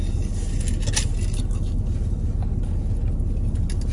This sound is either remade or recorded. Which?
recorded